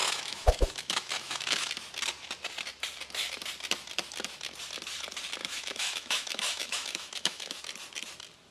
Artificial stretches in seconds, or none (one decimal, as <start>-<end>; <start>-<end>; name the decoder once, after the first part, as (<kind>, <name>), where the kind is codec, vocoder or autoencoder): 0.0-1.7 (autoencoder, DAC-VAE); 5.4-7.6